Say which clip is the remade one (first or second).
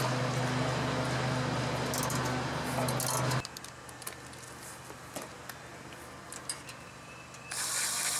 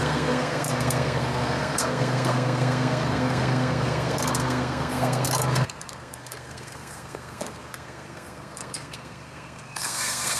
second